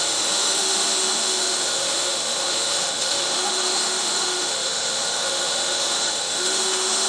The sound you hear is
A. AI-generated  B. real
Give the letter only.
A